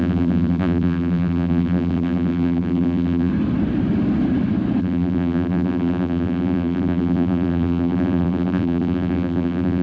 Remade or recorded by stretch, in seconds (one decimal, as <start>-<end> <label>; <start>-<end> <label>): 0.0-3.3 remade; 3.3-4.8 recorded; 4.8-9.8 remade